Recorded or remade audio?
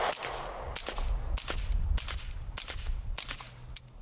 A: recorded